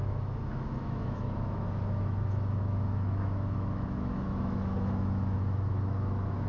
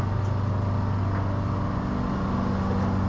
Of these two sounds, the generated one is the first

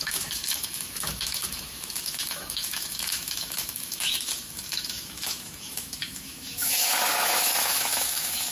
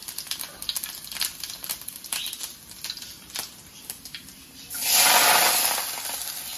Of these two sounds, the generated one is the first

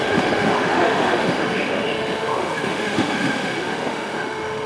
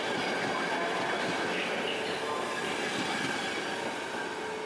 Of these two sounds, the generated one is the first